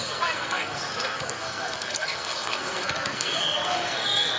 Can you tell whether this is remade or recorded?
remade